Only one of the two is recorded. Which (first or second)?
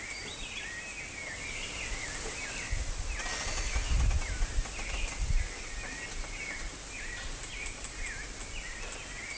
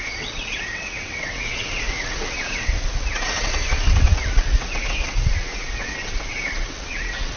first